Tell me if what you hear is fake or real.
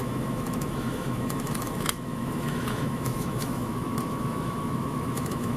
fake